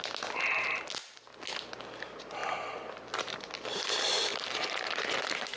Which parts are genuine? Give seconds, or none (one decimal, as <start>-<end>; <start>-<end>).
0.0-4.3